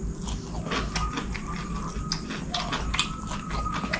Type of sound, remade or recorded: recorded